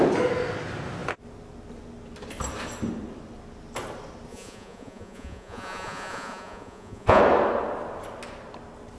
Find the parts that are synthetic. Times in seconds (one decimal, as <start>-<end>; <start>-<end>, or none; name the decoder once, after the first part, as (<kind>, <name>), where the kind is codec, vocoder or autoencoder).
4.3-7.2 (vocoder, Vocos)